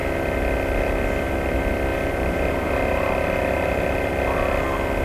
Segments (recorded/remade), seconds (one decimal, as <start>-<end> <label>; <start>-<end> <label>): 0.0-1.9 recorded; 1.9-4.1 remade; 4.1-5.0 recorded